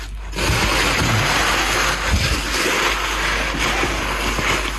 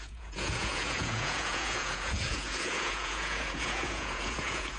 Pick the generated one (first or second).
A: second